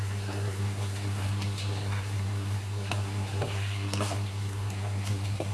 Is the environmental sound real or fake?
fake